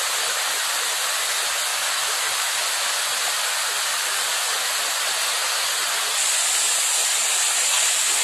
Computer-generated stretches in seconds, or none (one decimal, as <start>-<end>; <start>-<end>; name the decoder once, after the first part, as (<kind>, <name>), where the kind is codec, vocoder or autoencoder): none